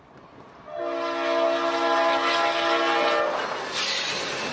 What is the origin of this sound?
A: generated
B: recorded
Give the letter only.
B